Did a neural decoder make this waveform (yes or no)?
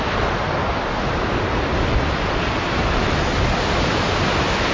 no